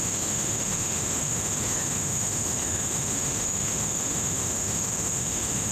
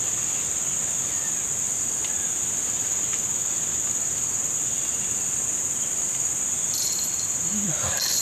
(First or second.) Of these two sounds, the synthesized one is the first